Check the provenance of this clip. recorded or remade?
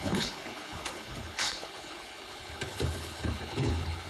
remade